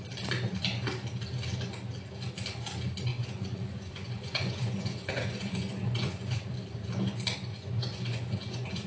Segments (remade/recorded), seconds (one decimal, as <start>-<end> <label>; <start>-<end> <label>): 0.0-3.1 recorded; 3.1-6.5 remade; 6.5-7.5 recorded; 7.5-8.9 remade